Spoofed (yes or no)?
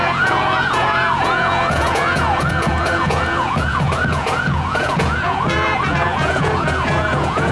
yes